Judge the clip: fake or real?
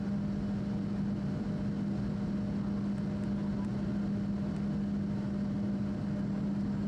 real